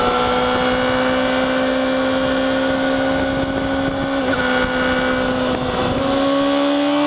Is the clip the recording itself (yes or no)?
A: yes